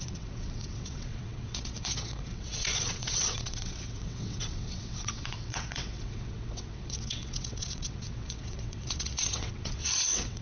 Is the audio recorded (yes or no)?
no